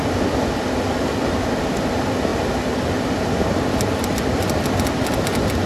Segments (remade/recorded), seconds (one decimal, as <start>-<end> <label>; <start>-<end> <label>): 0.0-5.7 recorded